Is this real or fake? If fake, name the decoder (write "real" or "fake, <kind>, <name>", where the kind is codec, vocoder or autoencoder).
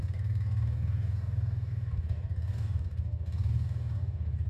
fake, codec, DAC